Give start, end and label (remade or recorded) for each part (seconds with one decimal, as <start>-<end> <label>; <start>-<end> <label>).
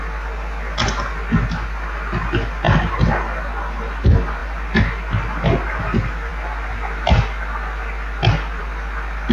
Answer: 0.0-9.3 recorded